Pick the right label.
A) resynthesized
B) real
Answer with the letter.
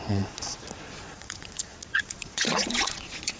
A